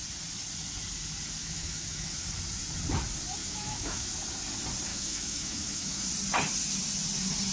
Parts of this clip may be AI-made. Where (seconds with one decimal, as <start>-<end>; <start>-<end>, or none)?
1.4-2.2; 3.4-4.1; 4.9-6.1